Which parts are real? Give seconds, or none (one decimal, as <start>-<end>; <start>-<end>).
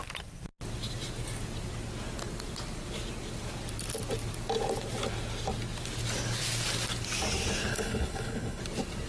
0.0-7.7; 8.6-9.1